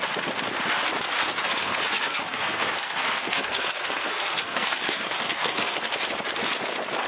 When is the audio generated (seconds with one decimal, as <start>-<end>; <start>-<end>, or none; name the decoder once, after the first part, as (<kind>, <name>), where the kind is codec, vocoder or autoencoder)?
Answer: 1.6-5.9 (codec, SNAC)